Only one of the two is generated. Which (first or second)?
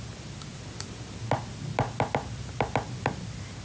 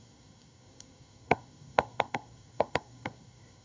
second